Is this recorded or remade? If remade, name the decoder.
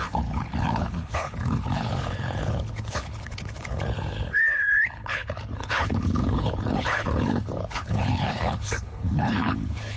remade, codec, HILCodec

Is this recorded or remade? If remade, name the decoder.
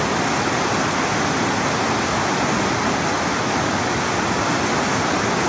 recorded